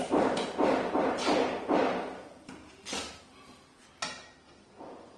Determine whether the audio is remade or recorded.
recorded